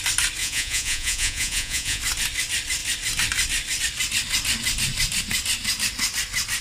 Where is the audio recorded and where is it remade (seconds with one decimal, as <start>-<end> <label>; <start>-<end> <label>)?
0.0-0.4 recorded; 0.4-2.0 remade; 2.0-6.6 recorded